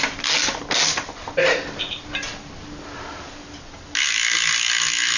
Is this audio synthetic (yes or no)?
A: no